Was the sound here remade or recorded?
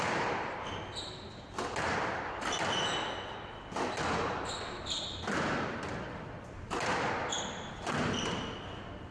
recorded